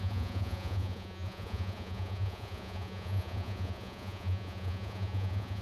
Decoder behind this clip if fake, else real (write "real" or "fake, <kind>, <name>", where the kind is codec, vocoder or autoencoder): fake, vocoder, Vocos